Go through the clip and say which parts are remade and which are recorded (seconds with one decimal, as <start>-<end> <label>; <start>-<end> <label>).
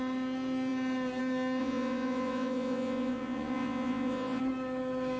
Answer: 0.0-1.6 recorded; 1.6-4.4 remade; 4.4-5.2 recorded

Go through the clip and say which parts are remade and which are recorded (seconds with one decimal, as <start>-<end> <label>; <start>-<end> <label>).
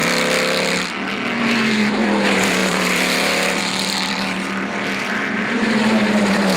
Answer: 0.0-1.4 recorded; 1.4-6.6 remade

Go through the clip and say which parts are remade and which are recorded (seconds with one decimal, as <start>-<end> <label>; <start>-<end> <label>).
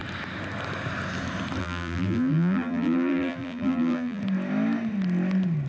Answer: 0.0-1.6 recorded; 1.6-4.2 remade; 4.2-5.7 recorded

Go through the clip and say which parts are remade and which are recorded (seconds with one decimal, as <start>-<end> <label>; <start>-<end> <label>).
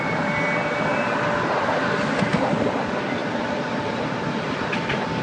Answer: 0.0-3.2 recorded; 3.2-5.2 remade